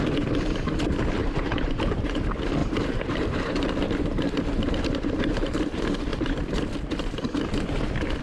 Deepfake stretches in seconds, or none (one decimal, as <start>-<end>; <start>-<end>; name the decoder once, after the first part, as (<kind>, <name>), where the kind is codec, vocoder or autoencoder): 1.2-2.1 (vocoder, BigVGAN v2); 2.6-5.6